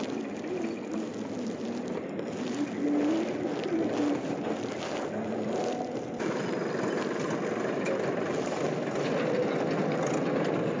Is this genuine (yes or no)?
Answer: yes